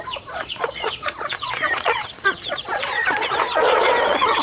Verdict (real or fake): fake